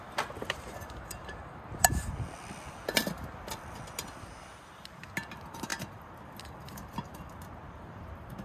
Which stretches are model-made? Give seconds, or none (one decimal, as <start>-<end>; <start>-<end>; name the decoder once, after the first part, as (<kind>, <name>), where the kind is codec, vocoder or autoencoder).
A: none